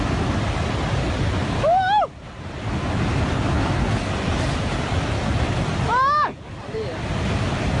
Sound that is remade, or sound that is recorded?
recorded